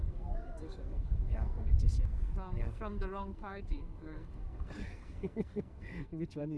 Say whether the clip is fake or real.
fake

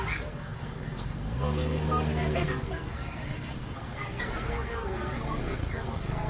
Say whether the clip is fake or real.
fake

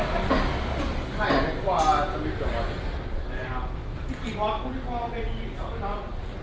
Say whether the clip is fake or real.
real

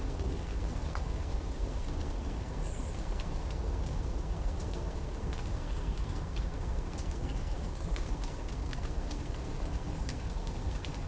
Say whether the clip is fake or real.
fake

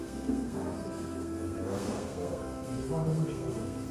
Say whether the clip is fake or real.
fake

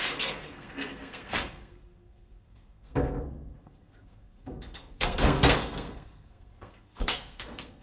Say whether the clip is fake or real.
fake